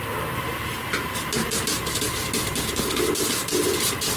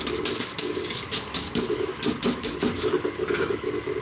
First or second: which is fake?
second